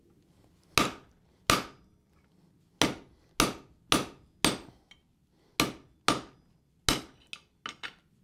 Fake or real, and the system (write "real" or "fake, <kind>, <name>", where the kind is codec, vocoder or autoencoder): real